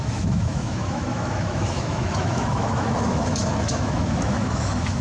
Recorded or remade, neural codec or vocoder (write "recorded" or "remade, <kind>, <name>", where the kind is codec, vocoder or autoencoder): remade, autoencoder, DAC-VAE